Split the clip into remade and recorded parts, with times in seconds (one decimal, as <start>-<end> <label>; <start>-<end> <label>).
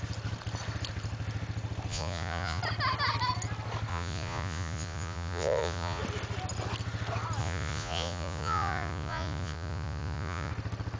0.0-1.9 recorded; 1.9-2.6 remade; 2.6-3.9 recorded; 3.9-6.0 remade; 6.0-7.4 recorded; 7.4-10.5 remade; 10.5-11.0 recorded